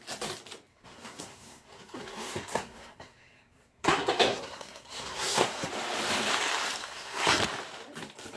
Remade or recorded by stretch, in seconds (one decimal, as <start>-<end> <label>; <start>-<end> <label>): 0.0-0.7 recorded; 0.7-5.7 remade; 5.7-6.8 recorded; 6.8-7.4 remade; 7.4-8.4 recorded